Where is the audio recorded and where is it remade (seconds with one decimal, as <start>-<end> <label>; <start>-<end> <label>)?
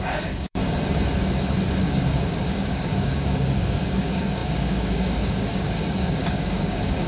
0.0-0.6 remade; 0.6-2.7 recorded; 2.7-7.1 remade